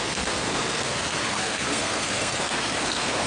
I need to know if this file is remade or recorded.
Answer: remade